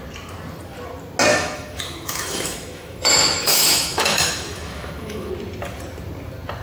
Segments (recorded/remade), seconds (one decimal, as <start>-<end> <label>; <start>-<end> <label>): 0.0-1.3 recorded; 1.3-5.3 remade; 5.3-6.6 recorded